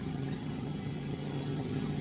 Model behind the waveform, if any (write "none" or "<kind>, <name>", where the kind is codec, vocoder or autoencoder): vocoder, HiFi-GAN